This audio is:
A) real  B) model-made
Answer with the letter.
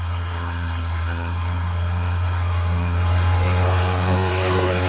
B